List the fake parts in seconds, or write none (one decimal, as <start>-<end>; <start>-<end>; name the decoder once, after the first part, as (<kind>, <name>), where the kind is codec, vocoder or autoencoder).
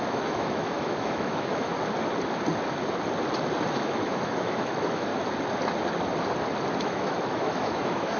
0.0-1.7 (autoencoder, DAC-VAE); 3.7-5.1; 6.8-8.2